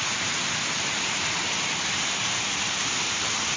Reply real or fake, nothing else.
fake